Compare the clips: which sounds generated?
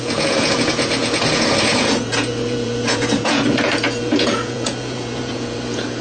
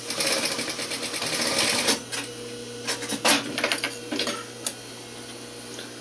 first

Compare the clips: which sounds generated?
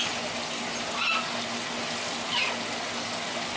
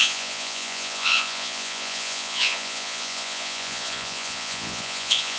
second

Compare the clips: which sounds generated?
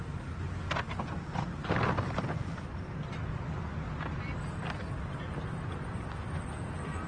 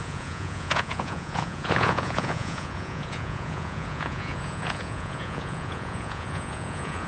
second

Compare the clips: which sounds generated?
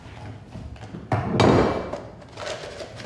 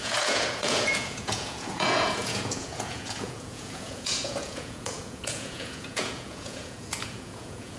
second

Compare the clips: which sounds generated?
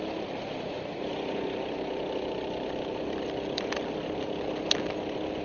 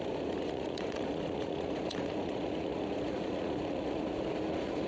second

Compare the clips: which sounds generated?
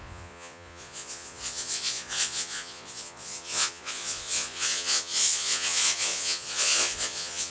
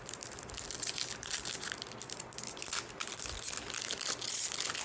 first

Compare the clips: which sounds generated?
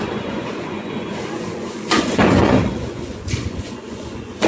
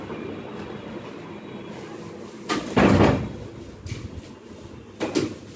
first